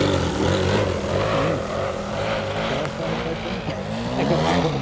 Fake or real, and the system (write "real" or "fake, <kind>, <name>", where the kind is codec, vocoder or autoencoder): real